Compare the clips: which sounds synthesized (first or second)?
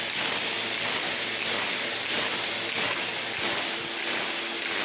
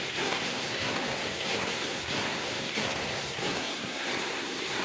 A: second